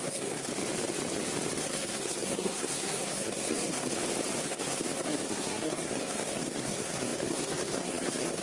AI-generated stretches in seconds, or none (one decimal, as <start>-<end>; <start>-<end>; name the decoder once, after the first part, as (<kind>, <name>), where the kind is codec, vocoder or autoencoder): 0.0-0.5 (codec, SNAC); 1.6-3.9; 4.4-8.4